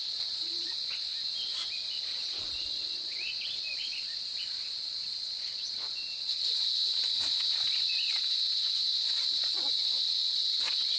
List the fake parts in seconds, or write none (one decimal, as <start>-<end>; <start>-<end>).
0.0-1.1; 2.1-11.0